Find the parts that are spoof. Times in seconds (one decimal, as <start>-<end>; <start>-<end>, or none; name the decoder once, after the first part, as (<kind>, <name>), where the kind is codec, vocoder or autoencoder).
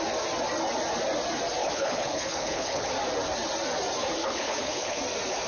1.6-2.9 (codec, HILCodec); 4.2-5.0